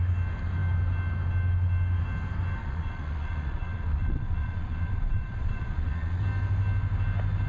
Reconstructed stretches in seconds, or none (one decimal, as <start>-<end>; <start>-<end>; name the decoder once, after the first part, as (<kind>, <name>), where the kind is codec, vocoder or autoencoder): 2.6-6.2 (vocoder, Vocos)